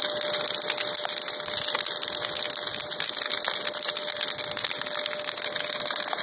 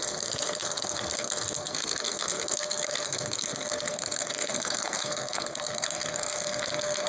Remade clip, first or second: second